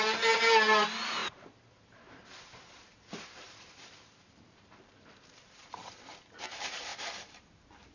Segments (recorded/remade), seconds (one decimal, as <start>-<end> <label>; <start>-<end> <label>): 0.0-6.9 remade; 6.9-7.9 recorded